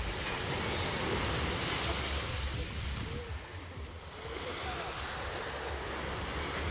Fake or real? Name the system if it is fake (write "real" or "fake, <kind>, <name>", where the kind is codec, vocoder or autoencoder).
real